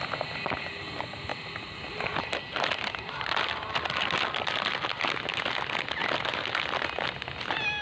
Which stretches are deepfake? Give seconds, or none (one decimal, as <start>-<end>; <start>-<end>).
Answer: none